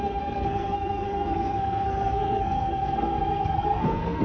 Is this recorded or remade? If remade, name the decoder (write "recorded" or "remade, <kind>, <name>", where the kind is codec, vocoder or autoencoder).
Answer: remade, codec, SNAC